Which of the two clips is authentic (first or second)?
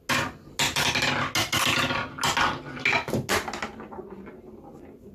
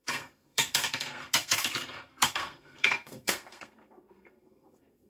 first